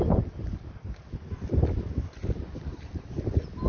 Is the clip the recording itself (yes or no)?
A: yes